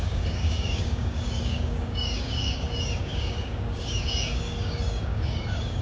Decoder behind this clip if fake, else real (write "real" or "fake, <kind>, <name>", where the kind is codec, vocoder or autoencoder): fake, codec, DAC